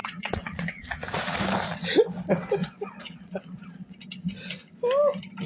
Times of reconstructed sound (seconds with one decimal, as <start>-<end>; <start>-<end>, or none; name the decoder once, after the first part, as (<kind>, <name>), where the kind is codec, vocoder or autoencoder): 0.0-1.4 (vocoder, Vocos); 2.6-4.0